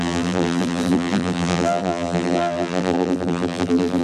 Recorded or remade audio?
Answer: remade